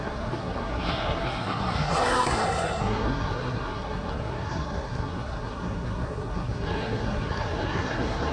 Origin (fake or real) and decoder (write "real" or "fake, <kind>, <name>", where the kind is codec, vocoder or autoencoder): fake, codec, SNAC